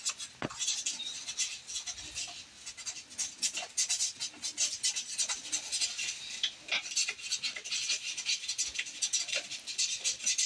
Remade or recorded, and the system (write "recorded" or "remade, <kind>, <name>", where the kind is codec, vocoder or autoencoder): recorded